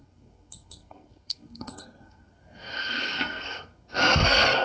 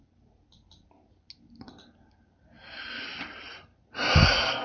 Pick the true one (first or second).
second